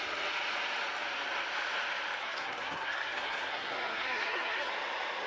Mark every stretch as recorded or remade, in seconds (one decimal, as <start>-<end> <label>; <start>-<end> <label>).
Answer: 0.0-2.2 recorded; 2.2-4.7 remade; 4.7-5.3 recorded